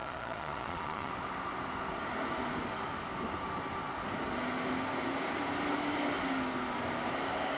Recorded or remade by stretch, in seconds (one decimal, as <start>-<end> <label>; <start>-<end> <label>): 0.0-1.1 remade; 1.1-7.6 recorded